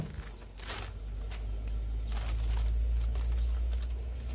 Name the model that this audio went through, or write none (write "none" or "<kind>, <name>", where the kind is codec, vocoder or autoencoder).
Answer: none